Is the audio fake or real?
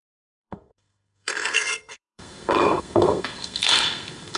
fake